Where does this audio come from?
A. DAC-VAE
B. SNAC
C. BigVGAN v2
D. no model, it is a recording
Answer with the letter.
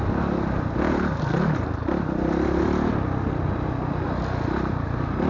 D